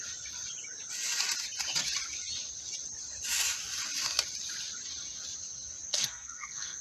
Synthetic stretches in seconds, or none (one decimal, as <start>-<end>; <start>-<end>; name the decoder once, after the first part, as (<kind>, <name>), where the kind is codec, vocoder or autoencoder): 5.9-6.8 (codec, SNAC)